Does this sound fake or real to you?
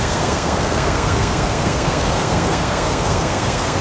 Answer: fake